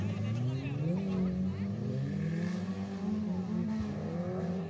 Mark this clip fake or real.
real